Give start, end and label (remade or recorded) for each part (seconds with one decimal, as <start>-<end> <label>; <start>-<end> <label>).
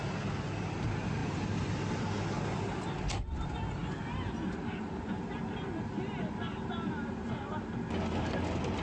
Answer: 0.0-1.2 recorded; 1.2-2.0 remade; 2.0-8.8 recorded